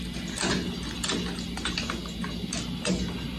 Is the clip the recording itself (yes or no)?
yes